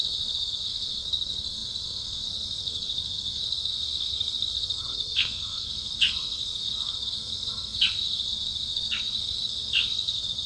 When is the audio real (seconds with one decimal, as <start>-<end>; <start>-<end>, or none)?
none